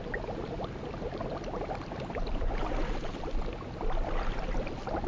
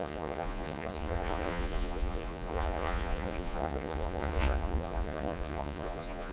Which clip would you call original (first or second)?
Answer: first